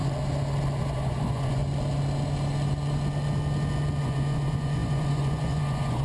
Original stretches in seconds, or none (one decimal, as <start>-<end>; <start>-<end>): 0.0-0.8; 1.6-4.0